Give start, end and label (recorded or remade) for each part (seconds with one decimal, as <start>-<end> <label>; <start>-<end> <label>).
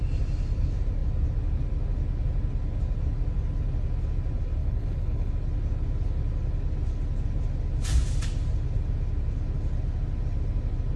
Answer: 0.0-4.6 recorded; 4.6-5.3 remade; 5.3-11.0 recorded